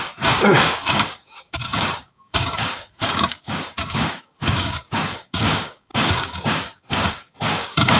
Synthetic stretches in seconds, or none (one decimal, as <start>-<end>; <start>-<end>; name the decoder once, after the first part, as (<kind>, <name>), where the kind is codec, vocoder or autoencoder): 0.0-8.0 (codec, DAC)